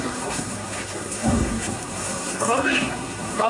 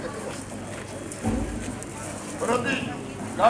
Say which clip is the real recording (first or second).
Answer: second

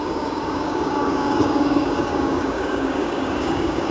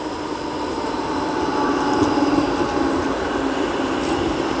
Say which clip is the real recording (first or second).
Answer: second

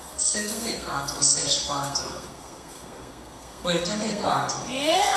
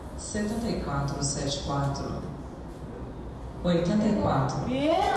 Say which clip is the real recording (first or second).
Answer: second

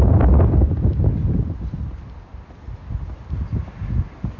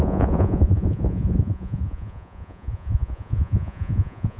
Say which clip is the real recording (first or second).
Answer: first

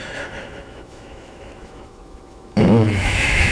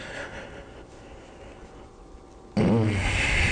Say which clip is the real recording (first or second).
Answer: second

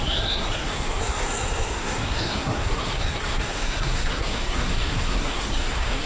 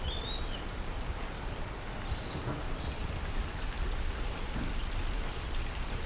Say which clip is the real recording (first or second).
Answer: second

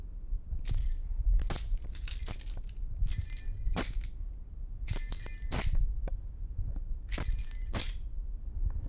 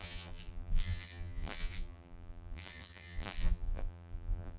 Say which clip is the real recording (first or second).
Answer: first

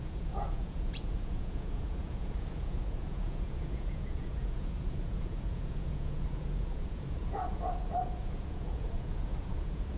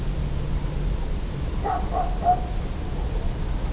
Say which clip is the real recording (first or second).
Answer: second